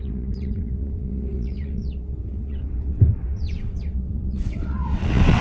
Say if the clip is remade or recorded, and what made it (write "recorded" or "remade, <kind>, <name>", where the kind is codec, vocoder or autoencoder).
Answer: remade, vocoder, WaveNeXt